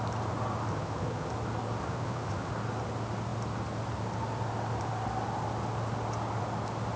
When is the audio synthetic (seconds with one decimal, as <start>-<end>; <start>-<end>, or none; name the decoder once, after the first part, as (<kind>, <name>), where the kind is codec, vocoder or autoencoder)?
0.7-1.3 (vocoder, HiFi-GAN); 1.8-2.5